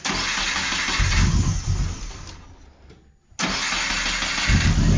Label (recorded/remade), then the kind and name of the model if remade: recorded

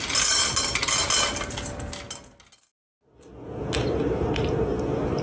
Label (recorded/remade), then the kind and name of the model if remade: recorded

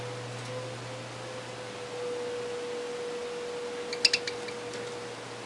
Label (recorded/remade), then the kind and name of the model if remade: recorded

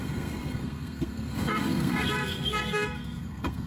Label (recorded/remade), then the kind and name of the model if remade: remade, codec, SNAC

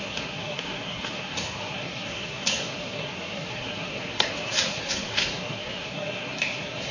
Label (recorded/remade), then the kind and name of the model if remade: remade, codec, SNAC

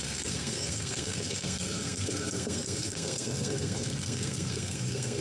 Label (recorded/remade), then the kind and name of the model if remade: remade, codec, SNAC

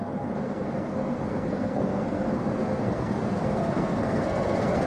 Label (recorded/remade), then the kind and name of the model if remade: remade, codec, SNAC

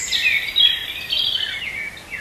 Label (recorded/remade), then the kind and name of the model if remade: recorded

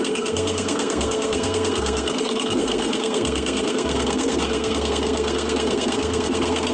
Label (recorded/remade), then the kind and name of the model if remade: remade, codec, SNAC